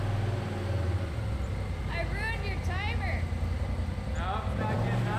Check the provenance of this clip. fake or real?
real